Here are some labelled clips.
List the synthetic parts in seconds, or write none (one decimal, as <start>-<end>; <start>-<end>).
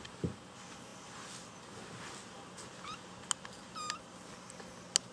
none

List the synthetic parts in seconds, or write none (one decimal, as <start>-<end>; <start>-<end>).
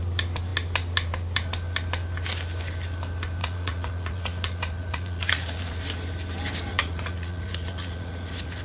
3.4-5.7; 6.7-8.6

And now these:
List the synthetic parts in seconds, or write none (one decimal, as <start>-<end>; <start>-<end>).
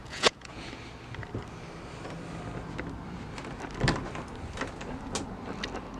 0.0-0.7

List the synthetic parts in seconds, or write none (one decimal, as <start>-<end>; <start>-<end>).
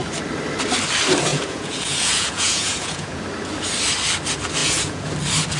1.3-3.2; 4.6-5.1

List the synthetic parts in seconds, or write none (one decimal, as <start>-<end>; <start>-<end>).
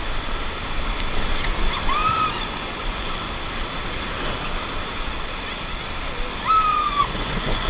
2.0-3.3; 6.7-7.7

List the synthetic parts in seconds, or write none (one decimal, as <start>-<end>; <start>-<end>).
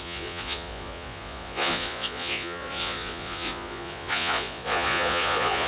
0.0-5.7